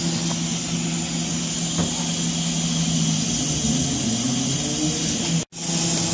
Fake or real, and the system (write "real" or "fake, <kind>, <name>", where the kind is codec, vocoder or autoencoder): real